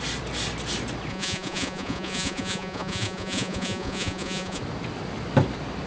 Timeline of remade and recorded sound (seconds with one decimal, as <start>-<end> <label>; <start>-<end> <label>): 0.0-1.1 recorded; 1.1-4.6 remade; 4.6-5.9 recorded